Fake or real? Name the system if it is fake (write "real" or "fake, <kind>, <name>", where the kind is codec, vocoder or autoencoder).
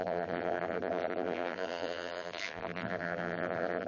fake, vocoder, BigVGAN v2